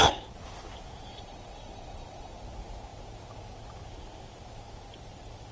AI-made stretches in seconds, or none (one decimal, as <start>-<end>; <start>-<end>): 1.1-2.3